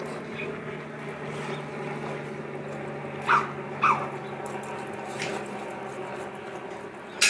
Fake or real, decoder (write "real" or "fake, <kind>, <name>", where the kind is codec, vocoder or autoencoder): real